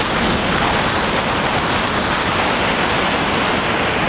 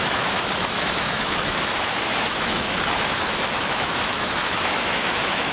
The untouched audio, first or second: first